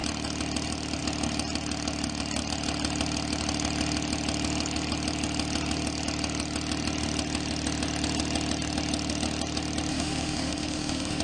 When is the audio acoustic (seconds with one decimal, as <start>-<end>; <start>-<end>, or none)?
0.0-9.9